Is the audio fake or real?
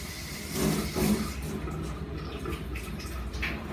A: real